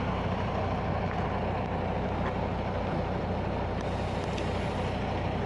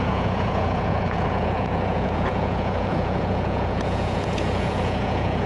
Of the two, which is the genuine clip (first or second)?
first